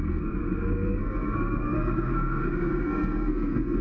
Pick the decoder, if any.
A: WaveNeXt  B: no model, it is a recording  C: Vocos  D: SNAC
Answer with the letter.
D